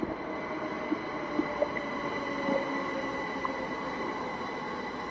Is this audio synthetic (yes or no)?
no